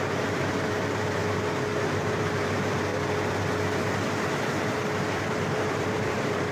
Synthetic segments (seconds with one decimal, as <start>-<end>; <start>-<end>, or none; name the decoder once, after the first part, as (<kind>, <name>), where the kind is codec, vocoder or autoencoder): 0.0-1.2 (vocoder, BigVGAN v2); 1.9-2.9; 5.8-6.5